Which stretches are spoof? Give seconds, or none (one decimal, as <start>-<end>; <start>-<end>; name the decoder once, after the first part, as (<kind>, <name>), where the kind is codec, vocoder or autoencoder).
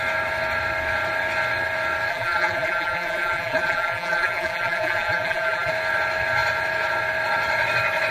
2.1-5.7 (vocoder, BigVGAN v2)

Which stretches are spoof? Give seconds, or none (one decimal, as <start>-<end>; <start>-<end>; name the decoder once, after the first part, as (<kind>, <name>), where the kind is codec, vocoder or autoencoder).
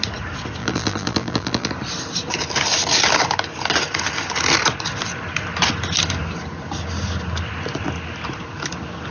0.6-1.7 (vocoder, BigVGAN v2)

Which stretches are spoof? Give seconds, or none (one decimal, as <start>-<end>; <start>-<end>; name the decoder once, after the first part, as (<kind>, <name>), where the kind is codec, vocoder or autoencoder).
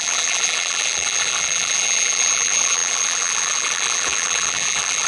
0.0-5.1 (vocoder, BigVGAN v2)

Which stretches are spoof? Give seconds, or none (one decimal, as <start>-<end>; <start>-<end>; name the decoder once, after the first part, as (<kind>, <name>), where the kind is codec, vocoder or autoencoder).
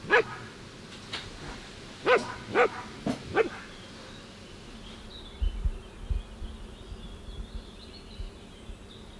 none